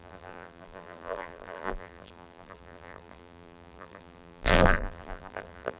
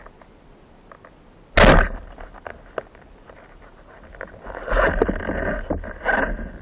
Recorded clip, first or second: second